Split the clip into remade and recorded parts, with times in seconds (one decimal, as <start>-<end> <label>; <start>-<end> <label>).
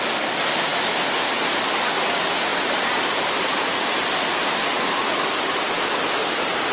0.0-6.7 recorded